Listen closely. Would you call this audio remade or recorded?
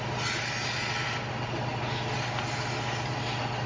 recorded